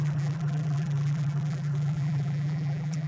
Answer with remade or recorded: remade